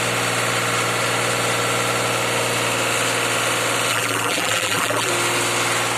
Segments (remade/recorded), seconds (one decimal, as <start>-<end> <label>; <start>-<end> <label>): 0.0-3.9 recorded; 3.9-5.1 remade; 5.1-6.0 recorded